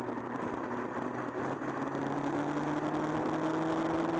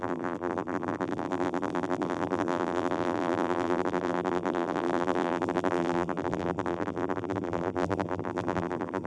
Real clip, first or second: first